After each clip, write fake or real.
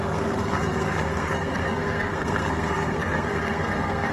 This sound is fake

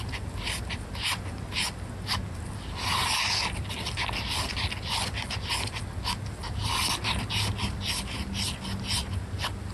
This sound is real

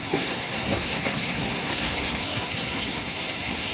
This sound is fake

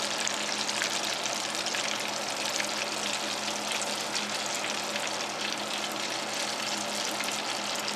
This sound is real